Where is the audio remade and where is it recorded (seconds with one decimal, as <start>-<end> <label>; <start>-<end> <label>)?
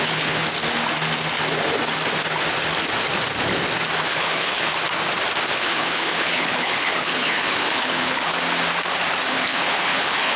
0.0-0.4 remade; 0.4-4.0 recorded; 4.0-4.7 remade; 4.7-5.5 recorded; 5.5-8.3 remade; 8.3-9.3 recorded; 9.3-10.4 remade